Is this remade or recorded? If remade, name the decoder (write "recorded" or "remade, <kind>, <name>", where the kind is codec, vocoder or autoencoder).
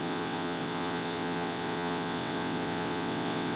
remade, vocoder, WaveNeXt